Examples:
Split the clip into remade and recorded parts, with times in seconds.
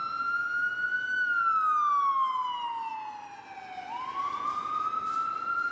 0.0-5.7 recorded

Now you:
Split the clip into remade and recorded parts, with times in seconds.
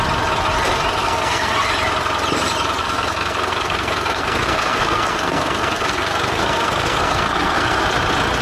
0.0-1.0 recorded; 1.0-1.5 remade; 1.5-2.8 recorded; 2.8-7.8 remade; 7.8-8.4 recorded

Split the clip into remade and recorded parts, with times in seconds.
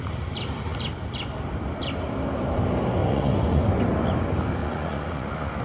0.0-3.0 recorded; 3.0-3.6 remade; 3.6-4.6 recorded; 4.6-5.6 remade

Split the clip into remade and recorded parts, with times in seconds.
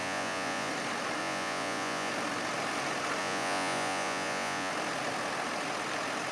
0.0-0.7 remade; 0.7-1.2 recorded; 1.2-2.1 remade; 2.1-3.2 recorded; 3.2-4.7 remade; 4.7-6.3 recorded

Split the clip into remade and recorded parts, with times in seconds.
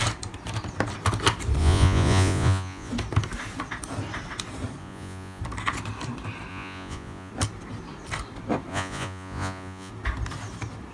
0.0-1.6 recorded; 1.6-2.9 remade; 2.9-4.8 recorded; 4.8-5.4 remade; 5.4-6.5 recorded; 6.5-7.3 remade; 7.3-8.7 recorded; 8.7-9.9 remade; 9.9-10.9 recorded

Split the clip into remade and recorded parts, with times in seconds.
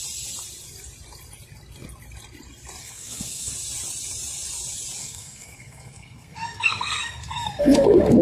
0.0-2.8 recorded; 2.8-3.5 remade; 3.5-5.0 recorded; 5.0-8.2 remade